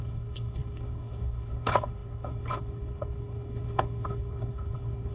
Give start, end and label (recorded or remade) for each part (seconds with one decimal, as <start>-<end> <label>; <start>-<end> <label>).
0.0-5.1 remade